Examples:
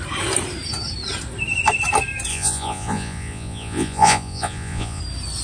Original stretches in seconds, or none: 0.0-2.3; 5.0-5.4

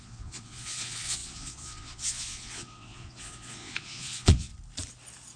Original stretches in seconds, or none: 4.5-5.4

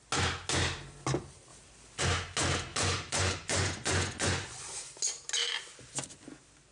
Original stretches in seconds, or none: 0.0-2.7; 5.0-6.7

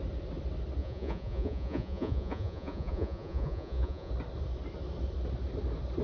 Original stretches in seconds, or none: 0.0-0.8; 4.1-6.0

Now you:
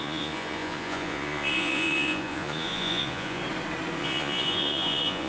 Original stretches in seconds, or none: 3.4-4.0

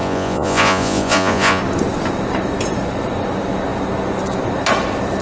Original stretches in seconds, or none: 1.6-5.2

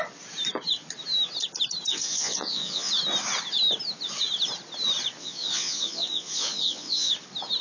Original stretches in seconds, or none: 0.0-1.9; 2.9-5.2; 7.1-7.6

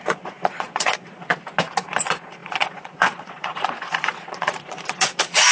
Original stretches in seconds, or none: 1.3-1.9